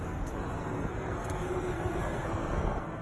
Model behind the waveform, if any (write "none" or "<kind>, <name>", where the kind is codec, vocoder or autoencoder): codec, SNAC